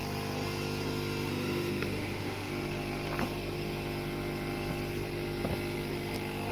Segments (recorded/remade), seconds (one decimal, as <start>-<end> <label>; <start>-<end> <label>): 0.0-1.3 recorded; 1.3-2.5 remade; 2.5-6.5 recorded